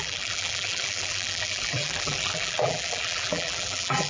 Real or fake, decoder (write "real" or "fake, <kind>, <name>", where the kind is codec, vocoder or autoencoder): fake, vocoder, BigVGAN v2